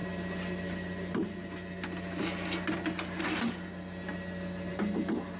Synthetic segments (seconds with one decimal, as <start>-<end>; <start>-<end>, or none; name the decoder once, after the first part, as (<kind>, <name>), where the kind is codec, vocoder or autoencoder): none